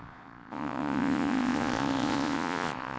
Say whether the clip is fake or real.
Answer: fake